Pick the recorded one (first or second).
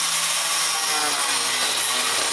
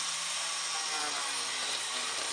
first